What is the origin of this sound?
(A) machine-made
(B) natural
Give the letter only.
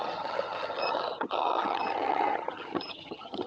A